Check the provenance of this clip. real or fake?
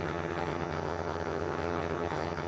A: fake